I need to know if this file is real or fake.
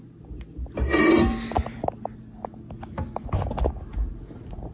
real